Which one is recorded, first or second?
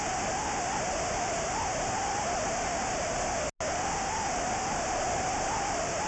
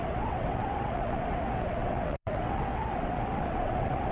first